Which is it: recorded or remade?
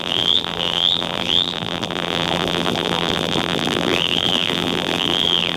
remade